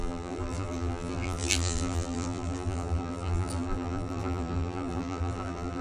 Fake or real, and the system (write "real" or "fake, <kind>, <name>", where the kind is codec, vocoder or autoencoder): fake, vocoder, BigVGAN v2